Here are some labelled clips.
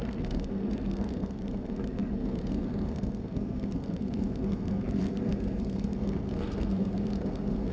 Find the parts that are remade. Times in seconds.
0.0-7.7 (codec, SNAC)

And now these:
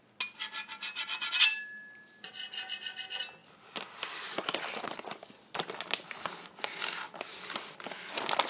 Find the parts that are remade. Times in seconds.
none